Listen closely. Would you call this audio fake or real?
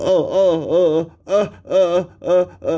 real